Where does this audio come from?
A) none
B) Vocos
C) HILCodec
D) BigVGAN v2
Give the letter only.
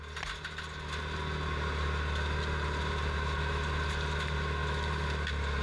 A